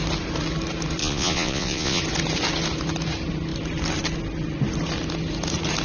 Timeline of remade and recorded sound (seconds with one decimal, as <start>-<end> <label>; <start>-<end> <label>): 0.0-1.0 recorded; 1.0-2.0 remade; 2.0-5.8 recorded